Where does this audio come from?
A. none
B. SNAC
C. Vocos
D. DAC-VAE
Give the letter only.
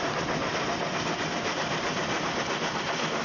A